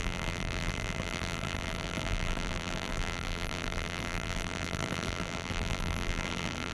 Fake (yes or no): yes